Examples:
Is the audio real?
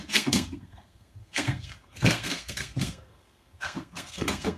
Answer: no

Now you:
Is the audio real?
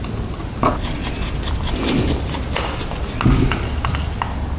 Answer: yes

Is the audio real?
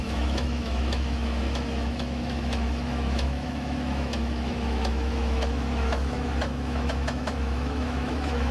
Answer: no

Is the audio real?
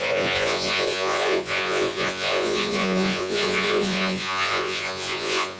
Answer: no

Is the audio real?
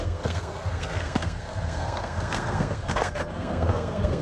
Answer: no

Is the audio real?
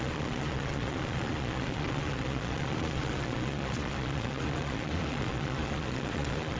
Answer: no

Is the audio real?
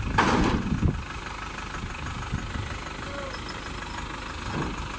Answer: yes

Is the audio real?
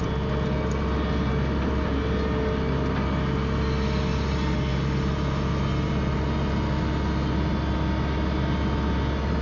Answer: yes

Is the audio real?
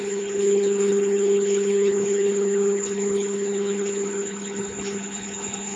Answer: no